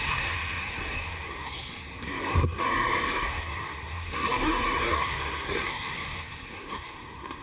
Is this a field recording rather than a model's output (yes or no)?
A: no